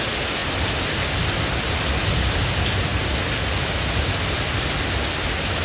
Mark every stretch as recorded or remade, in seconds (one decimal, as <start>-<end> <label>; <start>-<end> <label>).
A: 0.0-5.6 recorded